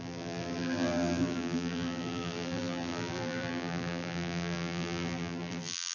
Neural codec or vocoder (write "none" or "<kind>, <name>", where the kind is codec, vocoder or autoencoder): vocoder, BigVGAN v2